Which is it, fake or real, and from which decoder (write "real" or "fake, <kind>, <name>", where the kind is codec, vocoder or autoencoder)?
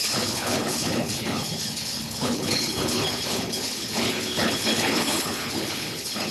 fake, codec, HILCodec